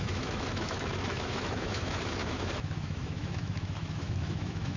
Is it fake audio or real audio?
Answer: fake